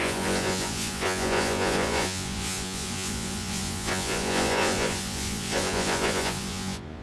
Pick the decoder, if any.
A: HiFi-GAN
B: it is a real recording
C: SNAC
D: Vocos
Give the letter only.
D